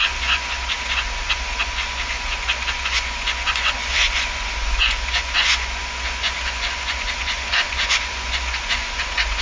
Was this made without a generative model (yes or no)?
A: no